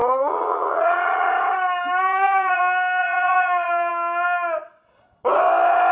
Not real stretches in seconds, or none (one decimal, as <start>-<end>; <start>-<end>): 0.0-1.3; 2.1-2.6; 3.0-3.9